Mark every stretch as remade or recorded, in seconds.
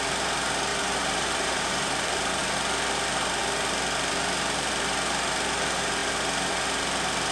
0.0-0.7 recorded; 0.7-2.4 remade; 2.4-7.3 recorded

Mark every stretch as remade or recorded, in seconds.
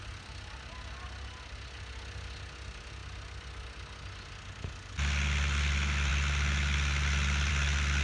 0.0-8.0 recorded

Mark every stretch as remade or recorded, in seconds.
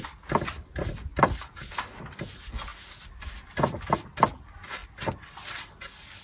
0.0-6.2 recorded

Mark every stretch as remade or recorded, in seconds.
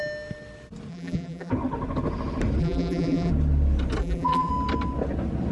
0.0-0.9 recorded; 0.9-1.5 remade; 1.5-2.6 recorded; 2.6-3.3 remade; 3.3-4.0 recorded; 4.0-4.5 remade; 4.5-5.5 recorded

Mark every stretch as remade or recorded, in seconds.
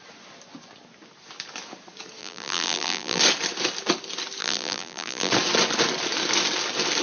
0.0-2.2 recorded; 2.2-3.2 remade; 3.2-4.4 recorded; 4.4-5.3 remade; 5.3-7.0 recorded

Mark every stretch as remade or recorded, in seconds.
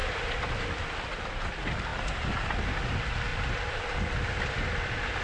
0.0-1.3 remade; 1.3-1.9 recorded; 1.9-2.6 remade; 2.6-3.3 recorded; 3.3-3.8 remade; 3.8-5.2 recorded